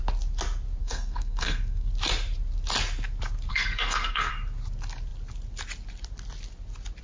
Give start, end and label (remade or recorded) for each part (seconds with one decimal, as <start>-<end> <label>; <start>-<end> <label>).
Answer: 0.0-0.8 recorded; 0.8-1.9 remade; 1.9-3.5 recorded; 3.5-4.3 remade; 4.3-7.0 recorded